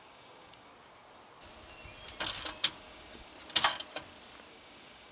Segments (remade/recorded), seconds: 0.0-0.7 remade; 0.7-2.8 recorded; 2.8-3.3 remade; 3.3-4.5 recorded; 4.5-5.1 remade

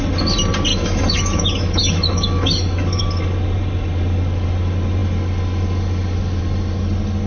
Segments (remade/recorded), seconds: 0.0-0.7 recorded; 0.7-3.0 remade; 3.0-7.3 recorded